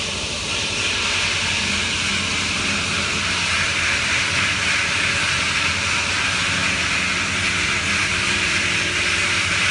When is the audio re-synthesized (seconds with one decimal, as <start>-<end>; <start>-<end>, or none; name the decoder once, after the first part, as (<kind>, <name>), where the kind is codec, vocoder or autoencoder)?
none